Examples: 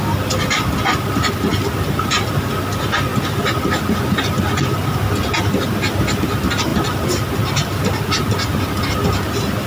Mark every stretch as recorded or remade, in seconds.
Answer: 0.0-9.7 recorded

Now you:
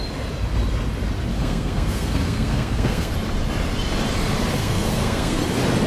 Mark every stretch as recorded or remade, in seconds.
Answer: 0.0-1.3 recorded; 1.3-3.1 remade; 3.1-4.6 recorded; 4.6-5.4 remade; 5.4-5.9 recorded

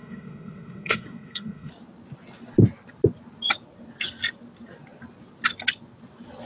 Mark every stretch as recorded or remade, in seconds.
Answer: 0.0-1.7 remade; 1.7-6.5 recorded

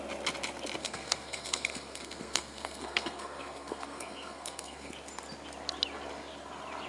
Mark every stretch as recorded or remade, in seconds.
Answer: 0.0-0.8 recorded; 0.8-4.9 remade; 4.9-6.9 recorded

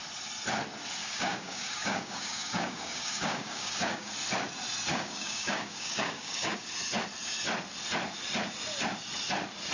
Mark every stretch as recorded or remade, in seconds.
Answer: 0.0-1.0 recorded; 1.0-4.1 remade; 4.1-4.9 recorded; 4.9-6.7 remade; 6.7-9.7 recorded

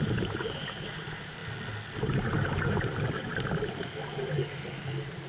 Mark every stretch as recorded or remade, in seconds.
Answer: 0.0-1.4 remade; 1.4-2.0 recorded; 2.0-3.3 remade; 3.3-5.3 recorded

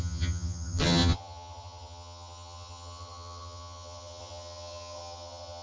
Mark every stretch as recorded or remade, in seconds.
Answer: 0.0-5.6 remade

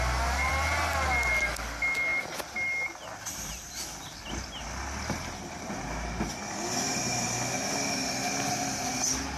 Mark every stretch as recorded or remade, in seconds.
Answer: 0.0-9.4 recorded